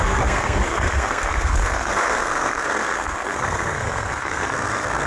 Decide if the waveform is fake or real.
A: fake